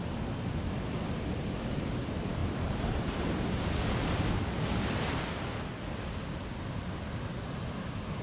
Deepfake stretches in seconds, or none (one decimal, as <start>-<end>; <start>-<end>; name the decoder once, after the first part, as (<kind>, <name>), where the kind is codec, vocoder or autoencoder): 2.4-4.0 (vocoder, BigVGAN v2)